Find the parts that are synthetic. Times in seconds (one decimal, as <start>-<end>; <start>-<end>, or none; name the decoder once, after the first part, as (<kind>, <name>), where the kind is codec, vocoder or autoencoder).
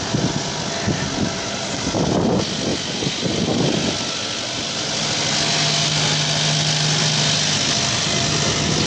none